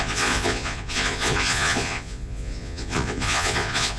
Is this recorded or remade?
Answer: remade